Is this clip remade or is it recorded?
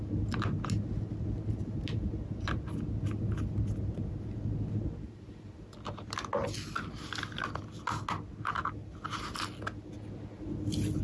recorded